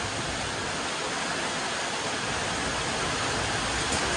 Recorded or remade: recorded